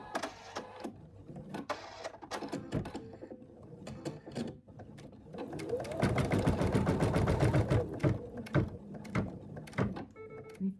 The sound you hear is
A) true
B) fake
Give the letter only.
A